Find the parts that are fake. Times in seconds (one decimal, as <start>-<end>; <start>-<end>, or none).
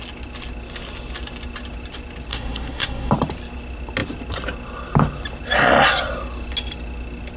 2.3-3.1